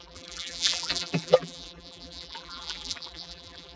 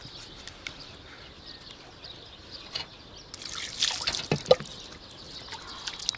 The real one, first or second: second